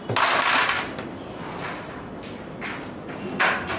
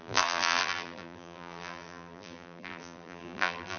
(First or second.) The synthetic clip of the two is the second